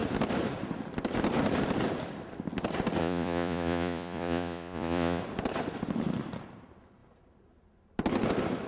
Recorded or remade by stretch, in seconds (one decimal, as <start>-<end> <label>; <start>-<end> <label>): 0.0-3.0 recorded; 3.0-5.2 remade; 5.2-8.7 recorded